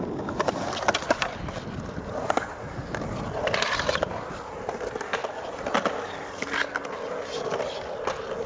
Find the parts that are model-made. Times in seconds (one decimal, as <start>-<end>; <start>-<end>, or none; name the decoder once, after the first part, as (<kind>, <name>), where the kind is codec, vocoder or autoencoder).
none